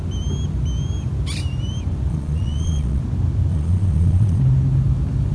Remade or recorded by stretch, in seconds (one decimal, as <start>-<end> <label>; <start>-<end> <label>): 0.0-2.1 recorded; 2.1-3.0 remade; 3.0-3.5 recorded; 3.5-4.4 remade; 4.4-5.3 recorded